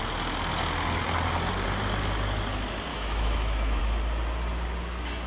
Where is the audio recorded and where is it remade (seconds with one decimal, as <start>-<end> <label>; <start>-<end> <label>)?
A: 0.0-2.9 recorded; 2.9-3.8 remade; 3.8-5.3 recorded